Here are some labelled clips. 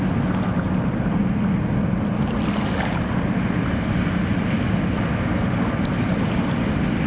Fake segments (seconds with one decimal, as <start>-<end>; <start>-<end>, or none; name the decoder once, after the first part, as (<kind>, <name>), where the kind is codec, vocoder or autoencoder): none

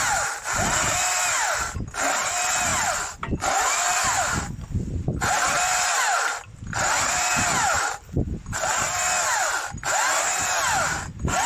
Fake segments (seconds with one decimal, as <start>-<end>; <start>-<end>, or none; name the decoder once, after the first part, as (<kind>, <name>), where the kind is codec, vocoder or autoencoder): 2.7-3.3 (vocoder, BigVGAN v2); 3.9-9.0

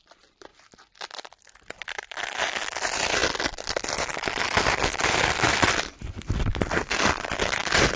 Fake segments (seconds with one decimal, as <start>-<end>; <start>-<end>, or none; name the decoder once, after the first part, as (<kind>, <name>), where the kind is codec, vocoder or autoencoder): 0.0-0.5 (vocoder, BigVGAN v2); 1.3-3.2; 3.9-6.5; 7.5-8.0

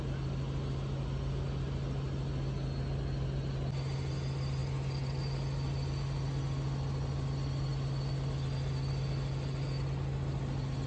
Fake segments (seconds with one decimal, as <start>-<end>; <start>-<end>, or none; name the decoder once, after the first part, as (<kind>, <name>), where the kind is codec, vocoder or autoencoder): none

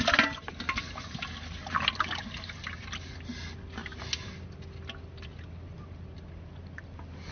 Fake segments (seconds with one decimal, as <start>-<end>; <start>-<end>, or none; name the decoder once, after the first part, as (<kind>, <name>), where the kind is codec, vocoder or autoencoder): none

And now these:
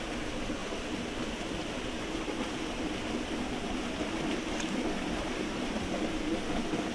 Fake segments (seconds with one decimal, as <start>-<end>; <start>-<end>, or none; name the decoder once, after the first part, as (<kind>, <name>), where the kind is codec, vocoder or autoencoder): 5.2-5.9 (vocoder, BigVGAN v2)

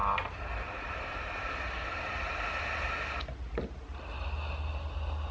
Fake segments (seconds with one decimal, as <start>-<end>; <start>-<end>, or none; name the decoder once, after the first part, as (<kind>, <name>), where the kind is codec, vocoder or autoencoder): 0.0-3.2 (vocoder, BigVGAN v2)